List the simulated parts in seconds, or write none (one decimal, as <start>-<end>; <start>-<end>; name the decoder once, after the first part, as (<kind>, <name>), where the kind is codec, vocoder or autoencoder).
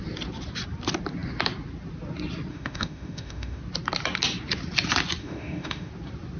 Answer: 2.5-3.6 (autoencoder, DAC-VAE); 5.2-5.9